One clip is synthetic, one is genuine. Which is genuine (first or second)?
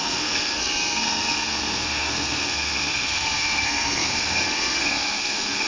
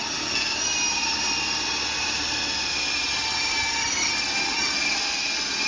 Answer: second